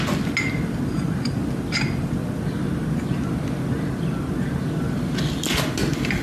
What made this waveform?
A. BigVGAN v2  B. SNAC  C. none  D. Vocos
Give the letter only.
C